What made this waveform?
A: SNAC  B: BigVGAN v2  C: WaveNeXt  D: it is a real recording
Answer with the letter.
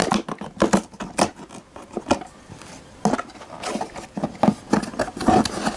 D